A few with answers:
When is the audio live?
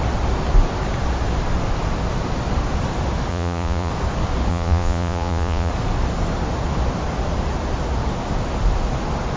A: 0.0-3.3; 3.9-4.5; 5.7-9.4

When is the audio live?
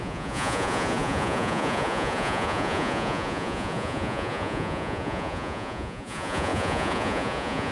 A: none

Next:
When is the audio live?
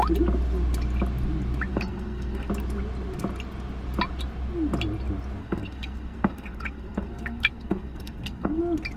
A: 0.0-1.7; 2.5-5.4; 8.6-9.0